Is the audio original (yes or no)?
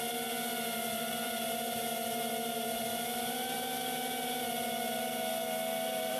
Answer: no